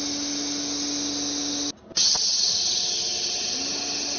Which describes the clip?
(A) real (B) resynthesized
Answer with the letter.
A